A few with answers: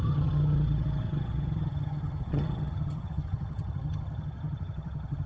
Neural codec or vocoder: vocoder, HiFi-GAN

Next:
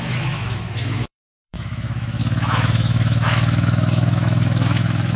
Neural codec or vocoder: autoencoder, DAC-VAE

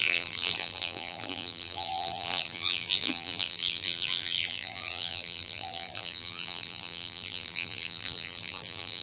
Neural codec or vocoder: vocoder, BigVGAN v2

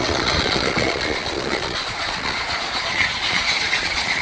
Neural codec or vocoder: vocoder, Vocos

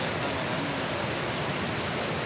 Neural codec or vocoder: none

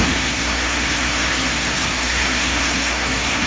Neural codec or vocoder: codec, SNAC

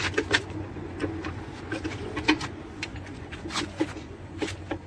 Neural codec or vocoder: vocoder, Vocos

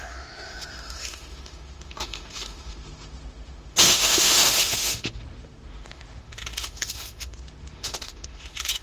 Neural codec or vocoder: autoencoder, DAC-VAE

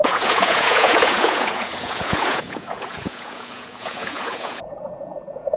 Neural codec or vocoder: vocoder, Vocos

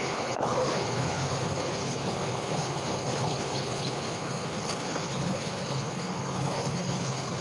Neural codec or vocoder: codec, HILCodec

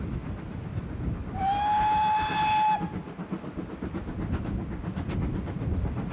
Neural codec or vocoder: none